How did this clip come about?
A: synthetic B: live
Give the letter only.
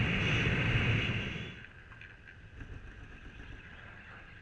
B